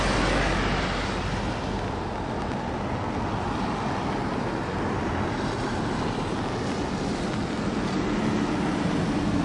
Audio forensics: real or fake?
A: real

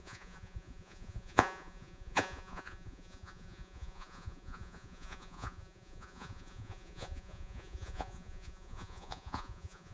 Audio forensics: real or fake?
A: fake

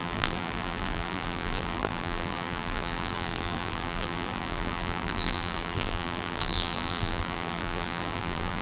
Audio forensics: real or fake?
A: fake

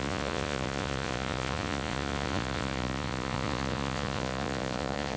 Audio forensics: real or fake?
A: fake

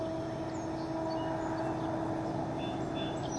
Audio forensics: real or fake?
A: real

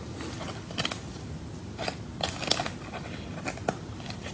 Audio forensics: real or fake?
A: real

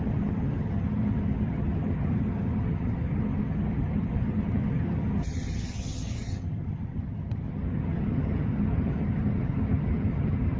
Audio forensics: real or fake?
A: fake